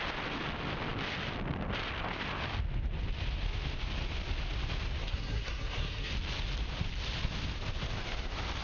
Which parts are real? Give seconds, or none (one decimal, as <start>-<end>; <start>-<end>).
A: 0.0-5.0; 6.1-8.6